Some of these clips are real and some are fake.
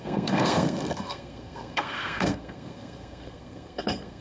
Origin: fake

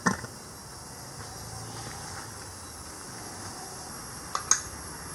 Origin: real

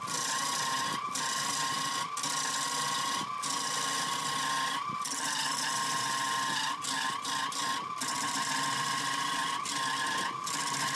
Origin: real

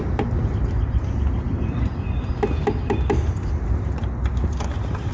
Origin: real